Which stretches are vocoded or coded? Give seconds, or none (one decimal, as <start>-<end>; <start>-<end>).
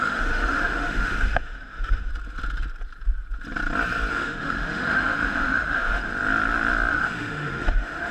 0.0-2.1; 4.1-6.1; 6.9-8.1